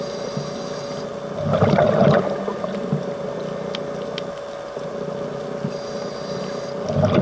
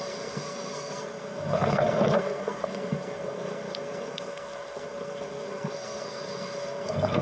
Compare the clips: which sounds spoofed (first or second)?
second